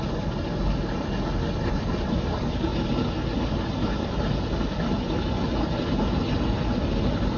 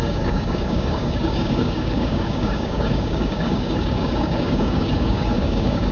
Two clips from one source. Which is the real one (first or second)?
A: first